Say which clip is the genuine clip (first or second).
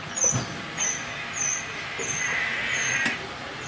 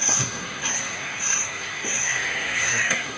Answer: first